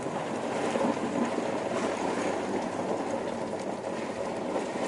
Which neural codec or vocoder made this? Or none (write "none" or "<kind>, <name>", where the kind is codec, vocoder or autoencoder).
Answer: none